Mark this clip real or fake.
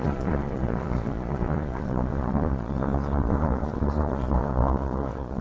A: fake